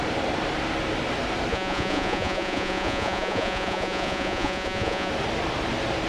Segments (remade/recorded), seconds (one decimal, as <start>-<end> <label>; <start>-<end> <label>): 0.0-1.5 recorded; 1.5-5.1 remade; 5.1-6.1 recorded